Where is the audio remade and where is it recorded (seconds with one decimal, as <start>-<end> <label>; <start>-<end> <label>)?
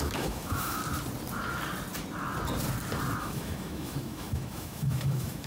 0.0-0.8 remade; 0.8-3.2 recorded; 3.2-5.5 remade